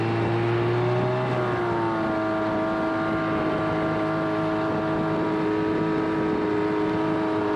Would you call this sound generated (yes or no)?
no